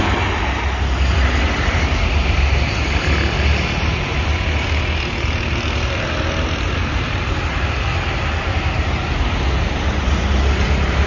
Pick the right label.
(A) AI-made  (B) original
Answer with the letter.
B